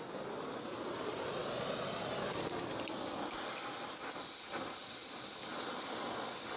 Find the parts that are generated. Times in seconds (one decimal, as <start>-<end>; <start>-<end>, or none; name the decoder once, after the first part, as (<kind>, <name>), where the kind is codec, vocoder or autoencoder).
0.0-1.4 (vocoder, BigVGAN v2); 4.5-6.6